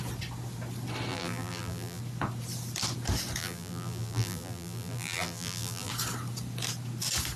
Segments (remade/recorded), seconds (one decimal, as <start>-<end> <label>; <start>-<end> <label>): 0.0-1.1 recorded; 1.1-2.0 remade; 2.0-3.4 recorded; 3.4-5.9 remade; 5.9-7.4 recorded